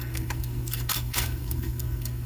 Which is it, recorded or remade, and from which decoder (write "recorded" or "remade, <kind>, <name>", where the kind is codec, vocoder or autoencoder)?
remade, codec, SNAC